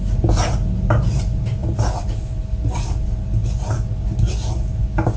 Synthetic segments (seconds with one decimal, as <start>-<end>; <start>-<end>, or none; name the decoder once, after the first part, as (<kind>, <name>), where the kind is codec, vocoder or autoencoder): none